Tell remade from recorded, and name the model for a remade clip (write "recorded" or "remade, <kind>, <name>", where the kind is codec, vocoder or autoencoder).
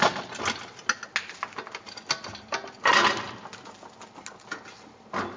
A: recorded